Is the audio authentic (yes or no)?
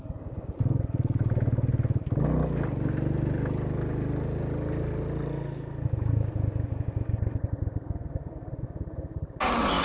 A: yes